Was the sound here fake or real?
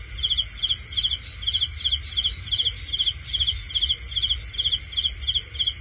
real